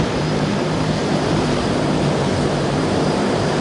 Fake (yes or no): yes